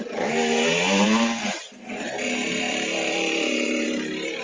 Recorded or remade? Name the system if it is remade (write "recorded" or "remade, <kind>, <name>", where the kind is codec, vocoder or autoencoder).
remade, vocoder, BigVGAN v2